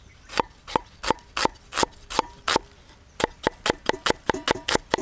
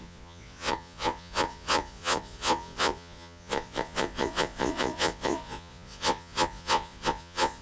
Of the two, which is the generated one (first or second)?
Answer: second